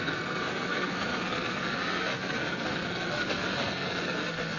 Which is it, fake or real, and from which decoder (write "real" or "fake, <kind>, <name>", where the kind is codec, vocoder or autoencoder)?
fake, codec, SNAC